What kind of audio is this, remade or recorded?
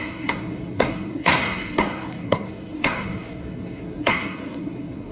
remade